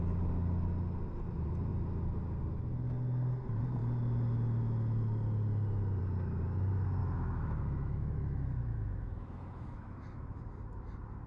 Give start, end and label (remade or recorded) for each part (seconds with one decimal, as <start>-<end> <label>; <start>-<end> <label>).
0.0-7.0 recorded; 7.0-10.5 remade; 10.5-11.3 recorded